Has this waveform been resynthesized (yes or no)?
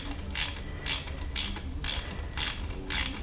no